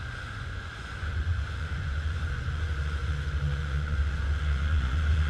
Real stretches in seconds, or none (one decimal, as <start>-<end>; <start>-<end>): none